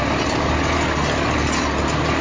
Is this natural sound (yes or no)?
yes